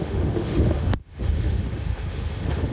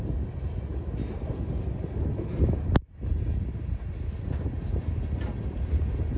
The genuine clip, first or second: second